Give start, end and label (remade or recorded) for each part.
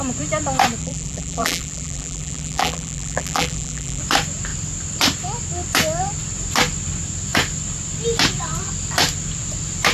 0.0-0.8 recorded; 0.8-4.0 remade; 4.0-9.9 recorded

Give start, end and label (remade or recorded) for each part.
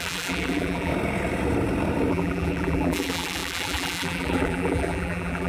0.0-0.9 remade; 0.9-2.1 recorded; 2.1-5.5 remade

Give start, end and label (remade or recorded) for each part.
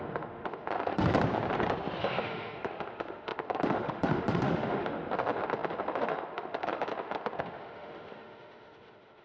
0.0-1.1 remade; 1.1-2.0 recorded; 2.0-9.2 remade